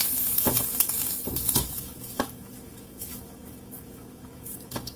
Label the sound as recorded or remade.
remade